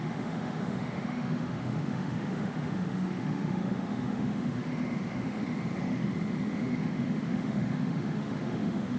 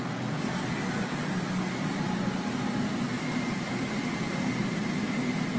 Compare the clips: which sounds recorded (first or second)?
second